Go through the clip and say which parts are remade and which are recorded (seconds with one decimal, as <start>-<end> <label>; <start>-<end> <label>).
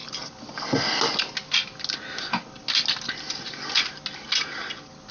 0.0-5.1 recorded